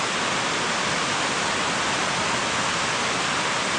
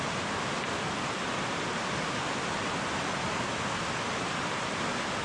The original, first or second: first